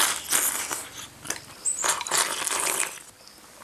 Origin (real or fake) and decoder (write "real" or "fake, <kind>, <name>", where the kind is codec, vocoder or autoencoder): real